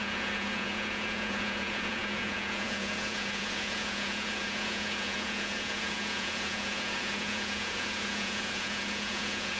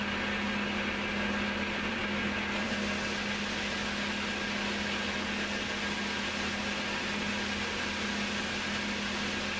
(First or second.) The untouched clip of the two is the second